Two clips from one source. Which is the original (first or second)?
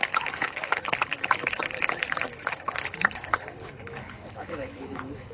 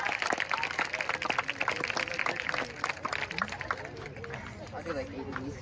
second